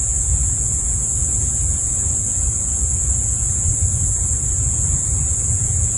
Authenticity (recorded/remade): remade